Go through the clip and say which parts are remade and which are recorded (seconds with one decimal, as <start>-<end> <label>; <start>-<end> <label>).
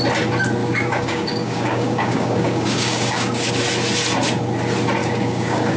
0.0-0.6 recorded; 0.6-3.5 remade; 3.5-5.0 recorded; 5.0-5.8 remade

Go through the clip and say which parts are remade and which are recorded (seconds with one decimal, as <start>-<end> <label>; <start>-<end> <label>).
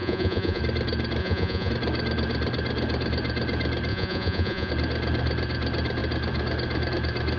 0.0-0.6 remade; 0.6-1.2 recorded; 1.2-1.7 remade; 1.7-3.9 recorded; 3.9-4.7 remade; 4.7-7.4 recorded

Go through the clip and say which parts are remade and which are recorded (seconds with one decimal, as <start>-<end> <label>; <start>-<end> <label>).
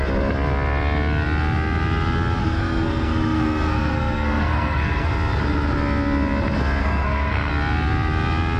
0.0-2.4 recorded; 2.4-5.1 remade; 5.1-6.8 recorded; 6.8-7.5 remade; 7.5-8.6 recorded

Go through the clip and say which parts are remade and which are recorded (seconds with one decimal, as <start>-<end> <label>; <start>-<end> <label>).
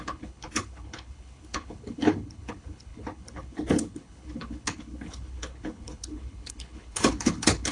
0.0-7.7 remade